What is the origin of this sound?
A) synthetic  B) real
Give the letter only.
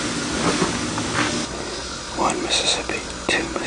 B